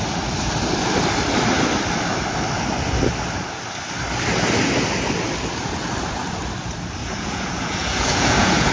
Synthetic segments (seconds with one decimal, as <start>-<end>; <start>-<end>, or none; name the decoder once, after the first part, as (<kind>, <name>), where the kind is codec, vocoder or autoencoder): 7.0-8.7 (vocoder, Vocos)